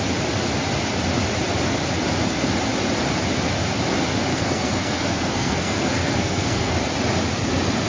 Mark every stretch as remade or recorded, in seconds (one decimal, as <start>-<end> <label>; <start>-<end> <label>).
0.0-4.3 recorded; 4.3-6.8 remade; 6.8-7.9 recorded

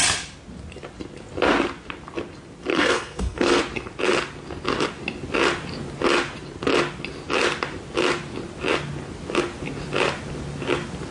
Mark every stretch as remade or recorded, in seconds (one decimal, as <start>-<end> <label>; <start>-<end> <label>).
0.0-2.7 recorded; 2.7-3.6 remade; 3.6-11.1 recorded

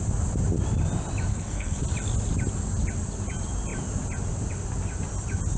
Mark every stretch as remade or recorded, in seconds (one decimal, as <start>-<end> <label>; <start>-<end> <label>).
0.0-1.3 recorded; 1.3-1.8 remade; 1.8-5.6 recorded

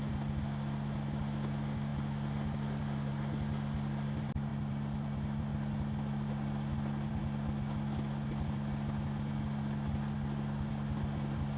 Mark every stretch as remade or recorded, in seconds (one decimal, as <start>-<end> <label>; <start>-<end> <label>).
0.0-11.6 recorded